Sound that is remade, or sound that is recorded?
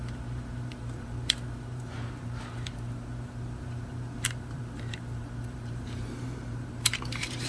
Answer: remade